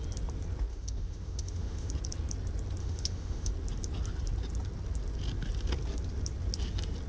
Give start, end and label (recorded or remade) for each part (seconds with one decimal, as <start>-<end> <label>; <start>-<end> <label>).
0.0-0.7 recorded; 0.7-1.9 remade; 1.9-2.8 recorded; 2.8-3.5 remade; 3.5-7.1 recorded